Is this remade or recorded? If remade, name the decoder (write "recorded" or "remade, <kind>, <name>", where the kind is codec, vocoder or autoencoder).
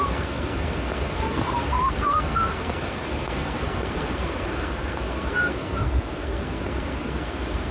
remade, codec, SNAC